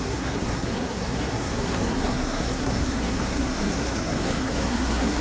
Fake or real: fake